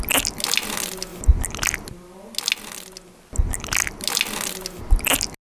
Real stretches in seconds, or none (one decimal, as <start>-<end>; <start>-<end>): 0.0-5.4